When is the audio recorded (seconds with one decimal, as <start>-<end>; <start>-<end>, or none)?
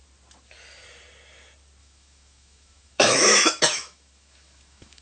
0.0-1.8